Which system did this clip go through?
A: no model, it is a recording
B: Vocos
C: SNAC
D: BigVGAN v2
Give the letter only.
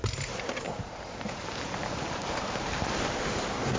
D